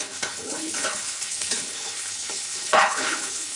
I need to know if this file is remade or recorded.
remade